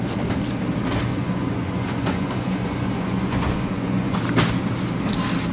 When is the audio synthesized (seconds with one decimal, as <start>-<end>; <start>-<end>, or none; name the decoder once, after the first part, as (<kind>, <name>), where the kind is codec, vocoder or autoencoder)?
1.1-4.2 (vocoder, Vocos)